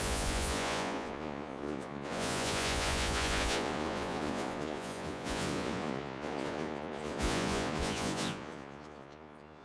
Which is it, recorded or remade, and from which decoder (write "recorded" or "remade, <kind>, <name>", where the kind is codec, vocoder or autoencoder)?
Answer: remade, vocoder, Vocos